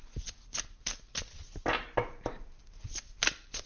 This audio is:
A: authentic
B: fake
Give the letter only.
A